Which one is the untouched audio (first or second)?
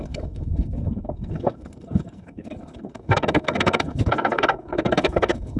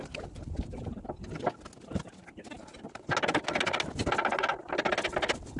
second